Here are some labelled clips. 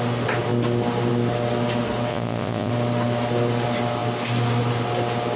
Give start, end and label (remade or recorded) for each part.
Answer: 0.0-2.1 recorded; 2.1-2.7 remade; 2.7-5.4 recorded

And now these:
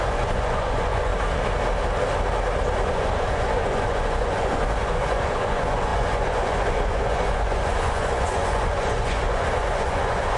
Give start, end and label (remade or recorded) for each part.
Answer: 0.0-1.1 remade; 1.1-2.9 recorded; 2.9-10.4 remade

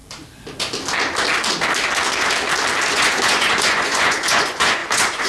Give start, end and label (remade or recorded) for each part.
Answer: 0.0-2.9 recorded; 2.9-5.3 remade

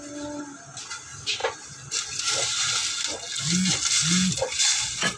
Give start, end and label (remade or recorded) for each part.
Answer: 0.0-4.6 recorded; 4.6-5.2 remade

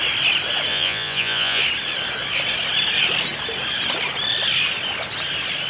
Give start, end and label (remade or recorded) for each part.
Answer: 0.0-0.7 recorded; 0.7-1.6 remade; 1.6-5.7 recorded

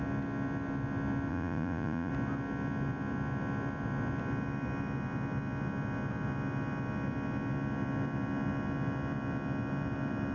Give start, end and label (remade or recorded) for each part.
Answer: 0.0-1.3 recorded; 1.3-2.1 remade; 2.1-10.3 recorded

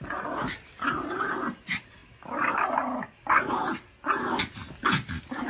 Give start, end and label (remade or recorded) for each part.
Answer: 0.0-5.5 recorded